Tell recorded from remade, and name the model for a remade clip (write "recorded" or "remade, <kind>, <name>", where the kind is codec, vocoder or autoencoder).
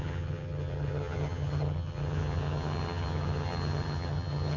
remade, vocoder, HiFi-GAN